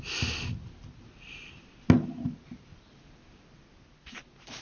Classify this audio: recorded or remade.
recorded